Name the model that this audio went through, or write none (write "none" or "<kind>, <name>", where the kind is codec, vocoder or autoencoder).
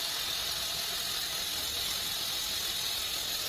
none